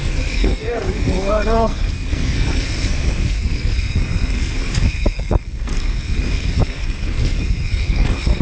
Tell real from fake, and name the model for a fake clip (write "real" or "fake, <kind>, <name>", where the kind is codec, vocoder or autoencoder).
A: fake, codec, SNAC